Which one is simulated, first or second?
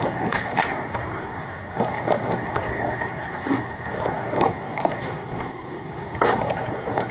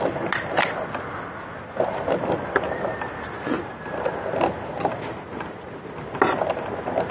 first